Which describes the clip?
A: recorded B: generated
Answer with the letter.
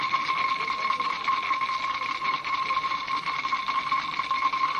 A